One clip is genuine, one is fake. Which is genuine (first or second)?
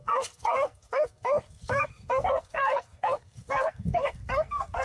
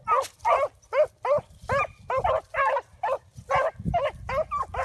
second